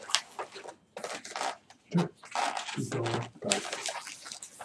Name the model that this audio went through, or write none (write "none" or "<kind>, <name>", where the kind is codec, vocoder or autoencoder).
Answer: none